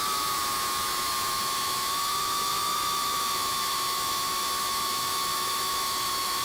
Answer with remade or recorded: remade